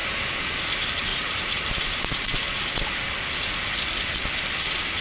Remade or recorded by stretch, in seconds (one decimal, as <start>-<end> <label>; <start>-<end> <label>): 0.0-0.6 remade; 0.6-1.1 recorded; 1.1-2.8 remade; 2.8-5.0 recorded